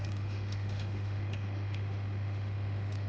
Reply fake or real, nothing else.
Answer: fake